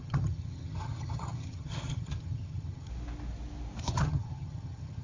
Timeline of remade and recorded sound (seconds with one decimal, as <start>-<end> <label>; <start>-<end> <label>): 0.0-2.9 remade; 2.9-3.8 recorded; 3.8-5.0 remade